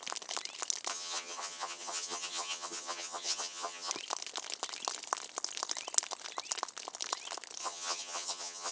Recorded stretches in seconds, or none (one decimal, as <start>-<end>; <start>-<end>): 0.0-0.9; 3.9-7.6